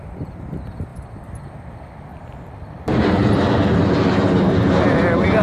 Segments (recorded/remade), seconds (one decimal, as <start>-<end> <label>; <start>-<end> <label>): 0.0-2.1 recorded; 2.1-5.4 remade